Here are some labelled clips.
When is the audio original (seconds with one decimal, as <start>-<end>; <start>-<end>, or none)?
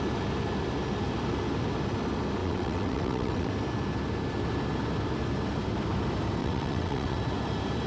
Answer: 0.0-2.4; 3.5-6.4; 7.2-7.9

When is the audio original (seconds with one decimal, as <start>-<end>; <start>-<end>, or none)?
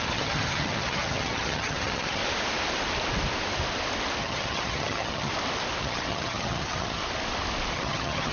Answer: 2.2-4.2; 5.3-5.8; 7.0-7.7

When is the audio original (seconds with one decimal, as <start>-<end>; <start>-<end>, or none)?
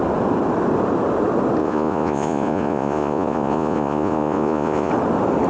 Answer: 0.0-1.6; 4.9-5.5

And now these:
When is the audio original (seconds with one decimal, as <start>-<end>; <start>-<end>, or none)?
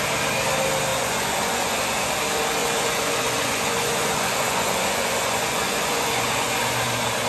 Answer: 0.0-0.9; 2.1-2.6; 6.6-7.3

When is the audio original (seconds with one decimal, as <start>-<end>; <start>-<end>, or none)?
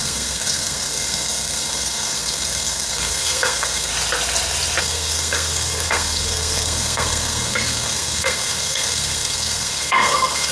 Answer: 3.9-4.8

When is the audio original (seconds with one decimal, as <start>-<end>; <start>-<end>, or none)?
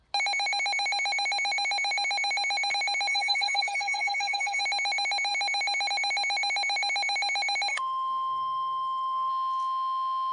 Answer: 0.0-3.1; 4.6-7.7; 9.3-10.3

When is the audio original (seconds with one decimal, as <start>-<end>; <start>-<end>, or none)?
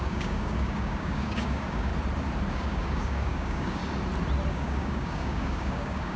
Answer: 1.9-2.5; 3.8-4.5